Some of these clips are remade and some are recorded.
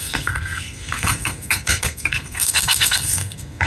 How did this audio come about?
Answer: remade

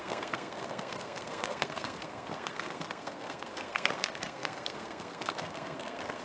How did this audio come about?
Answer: remade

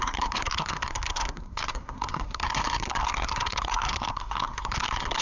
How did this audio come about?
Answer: remade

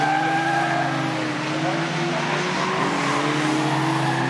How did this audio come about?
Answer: recorded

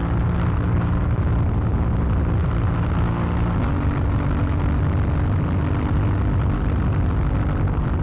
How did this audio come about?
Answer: recorded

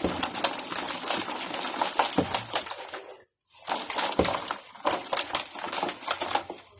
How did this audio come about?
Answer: recorded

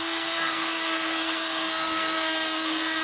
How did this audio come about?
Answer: remade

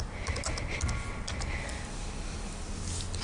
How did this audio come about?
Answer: recorded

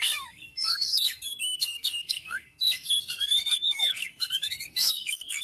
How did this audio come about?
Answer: remade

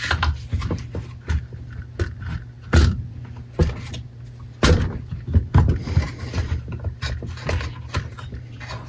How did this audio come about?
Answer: recorded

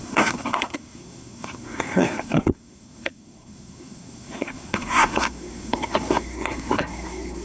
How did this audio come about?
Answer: remade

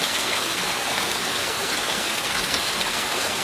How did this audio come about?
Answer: remade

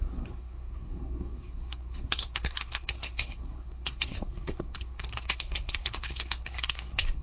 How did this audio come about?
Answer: remade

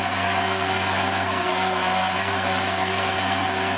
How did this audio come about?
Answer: remade